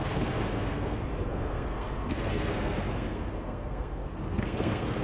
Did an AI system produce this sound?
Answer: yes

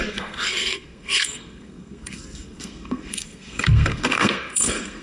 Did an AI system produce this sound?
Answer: yes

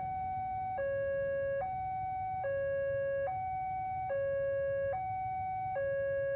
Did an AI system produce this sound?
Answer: no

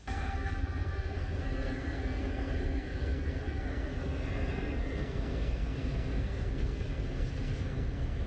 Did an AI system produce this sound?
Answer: yes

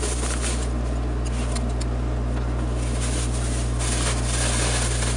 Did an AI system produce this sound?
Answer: no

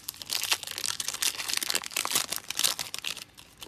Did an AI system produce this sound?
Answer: no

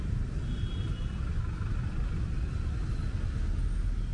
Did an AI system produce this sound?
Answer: no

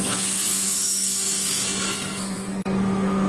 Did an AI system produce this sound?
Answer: yes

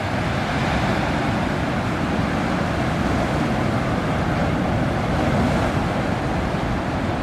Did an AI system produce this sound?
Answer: no